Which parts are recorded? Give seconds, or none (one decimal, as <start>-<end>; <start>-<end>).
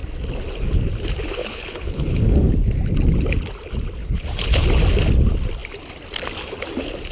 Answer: 0.0-1.4; 2.5-4.0; 4.7-7.1